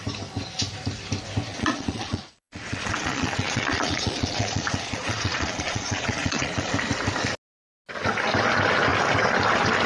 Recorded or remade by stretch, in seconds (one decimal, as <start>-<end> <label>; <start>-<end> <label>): 0.0-1.5 recorded; 1.5-6.7 remade; 6.7-9.9 recorded